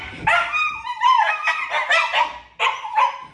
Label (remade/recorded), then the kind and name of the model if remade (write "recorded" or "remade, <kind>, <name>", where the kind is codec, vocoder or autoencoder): recorded